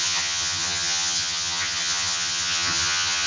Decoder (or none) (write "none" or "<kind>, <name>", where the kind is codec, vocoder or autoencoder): vocoder, HiFi-GAN